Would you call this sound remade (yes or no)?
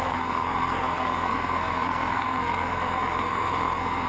yes